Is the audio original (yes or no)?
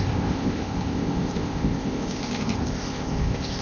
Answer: no